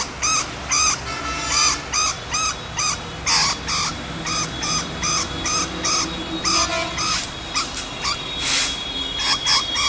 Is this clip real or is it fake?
real